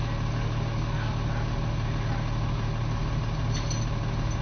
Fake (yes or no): no